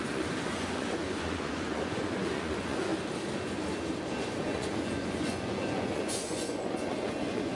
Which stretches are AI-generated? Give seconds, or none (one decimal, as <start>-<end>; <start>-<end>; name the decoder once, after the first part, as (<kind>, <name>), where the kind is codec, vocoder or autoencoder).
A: 0.0-2.9 (vocoder, Vocos); 4.3-7.6